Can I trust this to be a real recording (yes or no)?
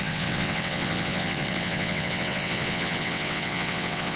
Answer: no